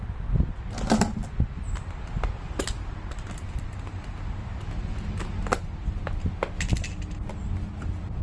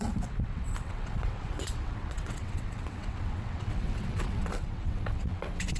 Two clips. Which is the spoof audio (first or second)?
second